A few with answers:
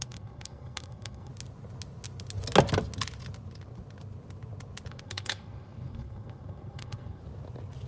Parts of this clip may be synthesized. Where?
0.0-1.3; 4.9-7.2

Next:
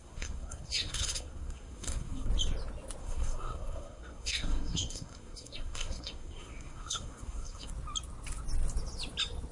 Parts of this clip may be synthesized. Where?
0.0-2.3; 3.0-7.7